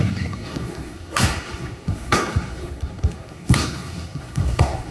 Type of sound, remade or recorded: remade